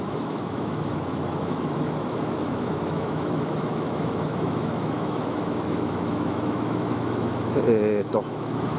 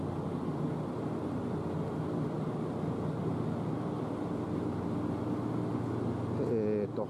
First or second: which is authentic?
second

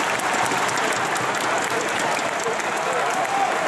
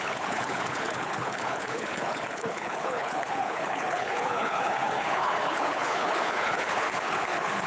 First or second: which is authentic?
first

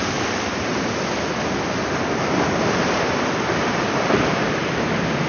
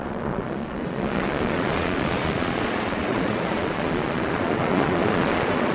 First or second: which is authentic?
first